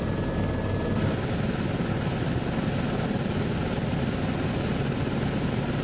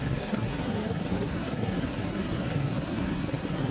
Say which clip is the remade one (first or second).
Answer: second